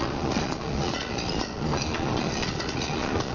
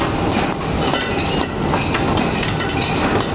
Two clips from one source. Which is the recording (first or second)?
second